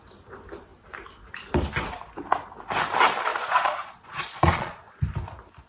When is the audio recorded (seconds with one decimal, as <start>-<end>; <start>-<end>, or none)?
0.0-3.3; 5.0-5.7